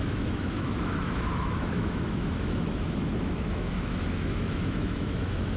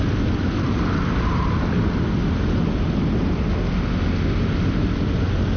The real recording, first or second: second